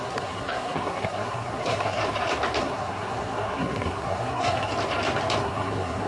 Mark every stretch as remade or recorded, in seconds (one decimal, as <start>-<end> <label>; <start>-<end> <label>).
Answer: 0.0-2.0 remade; 2.0-2.6 recorded; 2.6-4.7 remade; 4.7-5.4 recorded; 5.4-6.1 remade